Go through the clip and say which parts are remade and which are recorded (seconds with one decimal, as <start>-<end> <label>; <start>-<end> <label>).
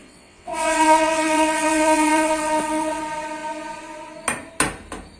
0.0-3.0 remade; 3.0-5.2 recorded